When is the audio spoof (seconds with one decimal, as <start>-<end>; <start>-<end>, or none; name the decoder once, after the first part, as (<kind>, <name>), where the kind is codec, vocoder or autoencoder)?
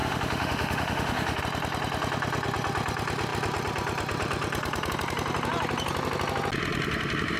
0.0-1.4 (autoencoder, DAC-VAE)